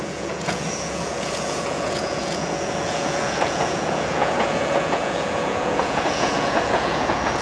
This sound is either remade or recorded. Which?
remade